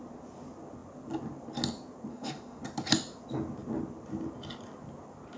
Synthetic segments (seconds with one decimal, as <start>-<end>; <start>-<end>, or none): 2.1-2.6